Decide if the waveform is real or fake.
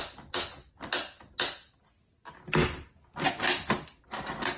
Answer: real